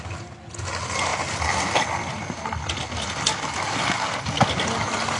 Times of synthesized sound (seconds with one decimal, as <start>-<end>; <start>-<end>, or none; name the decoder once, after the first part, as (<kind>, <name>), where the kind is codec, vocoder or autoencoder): none